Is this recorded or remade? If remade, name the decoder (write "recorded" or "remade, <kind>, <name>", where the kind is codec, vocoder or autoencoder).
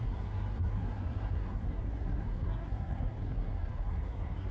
remade, codec, SNAC